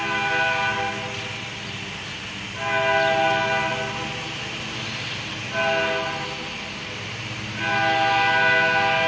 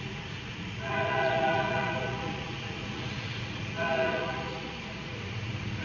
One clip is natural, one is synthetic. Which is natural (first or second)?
first